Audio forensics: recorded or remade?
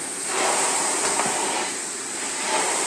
recorded